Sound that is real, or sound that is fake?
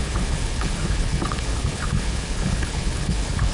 fake